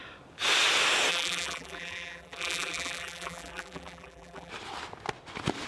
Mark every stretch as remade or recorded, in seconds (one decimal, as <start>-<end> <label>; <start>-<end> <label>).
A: 0.0-1.1 recorded; 1.1-4.5 remade; 4.5-5.7 recorded